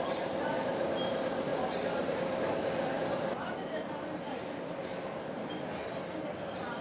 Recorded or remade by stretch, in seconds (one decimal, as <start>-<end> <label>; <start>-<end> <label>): 0.0-6.8 recorded